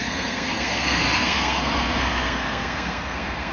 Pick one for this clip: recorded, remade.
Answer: remade